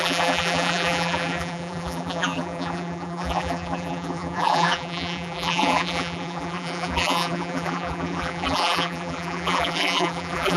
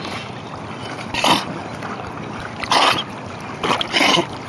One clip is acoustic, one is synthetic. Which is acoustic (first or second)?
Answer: second